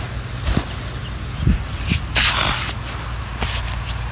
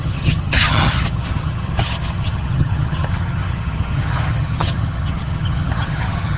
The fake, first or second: second